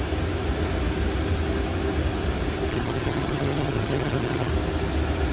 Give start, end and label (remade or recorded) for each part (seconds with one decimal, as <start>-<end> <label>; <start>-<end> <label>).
0.0-2.7 recorded; 2.7-4.5 remade; 4.5-5.3 recorded